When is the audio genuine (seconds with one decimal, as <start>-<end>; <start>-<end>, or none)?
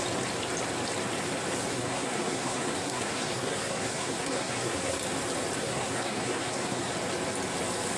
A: 0.0-1.7; 5.0-5.6; 6.9-8.0